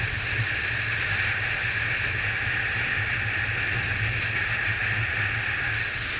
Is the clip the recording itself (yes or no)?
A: yes